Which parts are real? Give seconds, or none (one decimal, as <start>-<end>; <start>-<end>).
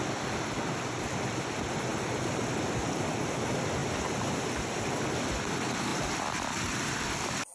0.0-3.8; 4.8-7.5